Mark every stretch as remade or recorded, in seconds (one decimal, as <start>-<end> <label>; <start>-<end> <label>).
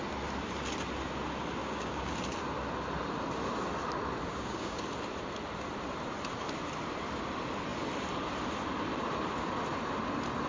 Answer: 0.0-1.6 recorded; 1.6-2.1 remade; 2.1-4.3 recorded; 4.3-4.8 remade; 4.8-10.5 recorded